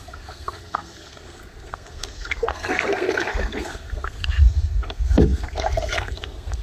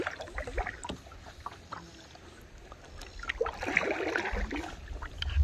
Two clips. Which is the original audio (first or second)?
second